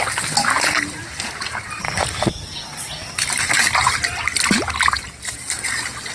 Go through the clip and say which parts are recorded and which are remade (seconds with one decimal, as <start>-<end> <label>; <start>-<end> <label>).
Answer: 0.0-6.1 recorded